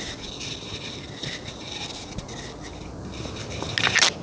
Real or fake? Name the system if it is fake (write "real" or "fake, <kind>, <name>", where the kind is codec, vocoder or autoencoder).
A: real